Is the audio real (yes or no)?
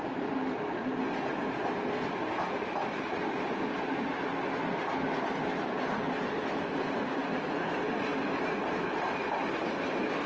yes